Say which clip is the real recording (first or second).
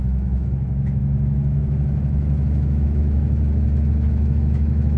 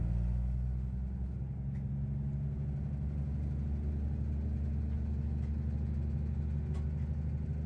second